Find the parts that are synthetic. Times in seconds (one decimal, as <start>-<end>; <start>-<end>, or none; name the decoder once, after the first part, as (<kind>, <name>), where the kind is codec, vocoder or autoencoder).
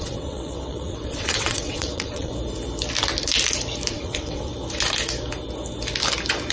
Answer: 0.0-2.3 (vocoder, WaveNeXt); 3.9-4.5